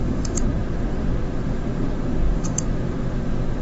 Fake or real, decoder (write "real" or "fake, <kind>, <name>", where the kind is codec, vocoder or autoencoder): fake, vocoder, BigVGAN v2